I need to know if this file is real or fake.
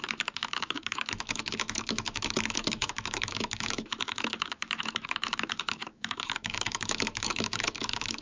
fake